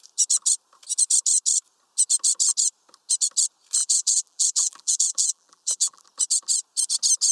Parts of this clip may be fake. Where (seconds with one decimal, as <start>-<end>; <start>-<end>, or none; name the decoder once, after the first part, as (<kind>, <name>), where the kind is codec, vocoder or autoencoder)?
3.8-6.0 (vocoder, BigVGAN v2)